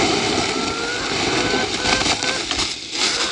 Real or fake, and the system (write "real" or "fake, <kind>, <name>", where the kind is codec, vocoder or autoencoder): real